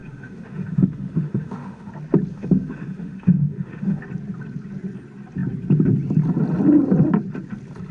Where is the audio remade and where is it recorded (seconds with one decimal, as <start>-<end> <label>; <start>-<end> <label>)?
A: 0.0-1.9 remade; 1.9-2.3 recorded; 2.3-4.0 remade; 4.0-7.9 recorded